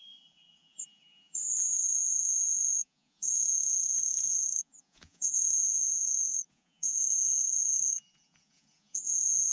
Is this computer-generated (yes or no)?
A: yes